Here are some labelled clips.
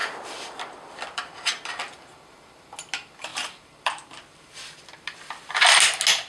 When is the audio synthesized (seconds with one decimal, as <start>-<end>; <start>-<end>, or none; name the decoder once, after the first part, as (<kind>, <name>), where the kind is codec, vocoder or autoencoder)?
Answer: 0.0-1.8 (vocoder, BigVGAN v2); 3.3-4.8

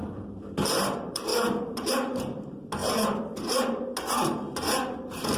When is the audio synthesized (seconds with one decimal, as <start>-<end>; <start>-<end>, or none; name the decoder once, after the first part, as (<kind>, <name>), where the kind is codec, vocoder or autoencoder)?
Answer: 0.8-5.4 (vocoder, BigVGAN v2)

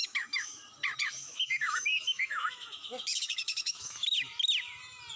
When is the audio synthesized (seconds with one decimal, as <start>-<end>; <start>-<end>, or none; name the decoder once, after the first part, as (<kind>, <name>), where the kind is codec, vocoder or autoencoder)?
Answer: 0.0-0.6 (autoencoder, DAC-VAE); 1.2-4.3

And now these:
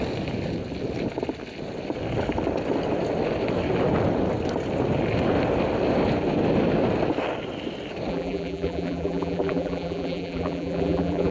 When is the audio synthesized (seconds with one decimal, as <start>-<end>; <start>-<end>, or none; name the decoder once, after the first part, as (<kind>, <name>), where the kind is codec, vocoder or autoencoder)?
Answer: 8.1-11.3 (vocoder, BigVGAN v2)

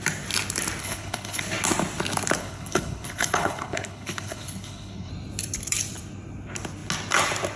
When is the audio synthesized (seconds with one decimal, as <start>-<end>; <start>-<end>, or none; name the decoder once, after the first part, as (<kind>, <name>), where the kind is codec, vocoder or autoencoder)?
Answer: 0.8-1.4 (codec, HILCodec); 2.4-5.1